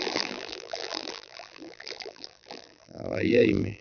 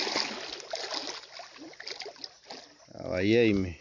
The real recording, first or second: second